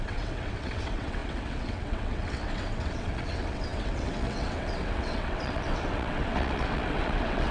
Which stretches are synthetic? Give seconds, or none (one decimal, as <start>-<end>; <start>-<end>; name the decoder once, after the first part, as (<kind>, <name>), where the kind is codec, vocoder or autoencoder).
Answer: 0.0-7.5 (vocoder, WaveNeXt)